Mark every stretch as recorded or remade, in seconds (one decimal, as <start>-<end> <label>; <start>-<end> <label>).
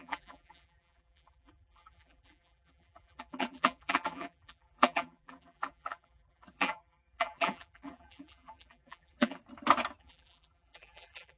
0.0-9.4 remade; 9.4-10.0 recorded; 10.0-11.4 remade